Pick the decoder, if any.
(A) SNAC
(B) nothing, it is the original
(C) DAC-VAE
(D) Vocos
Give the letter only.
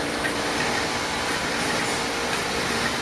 B